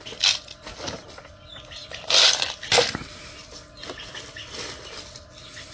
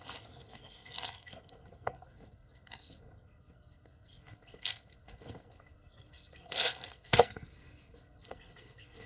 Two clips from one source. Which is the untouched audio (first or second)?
first